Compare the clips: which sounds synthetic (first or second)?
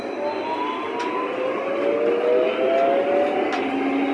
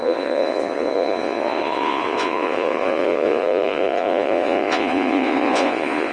second